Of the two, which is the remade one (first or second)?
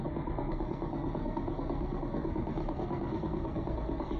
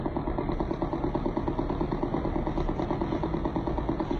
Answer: first